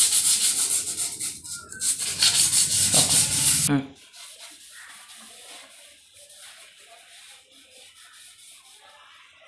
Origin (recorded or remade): recorded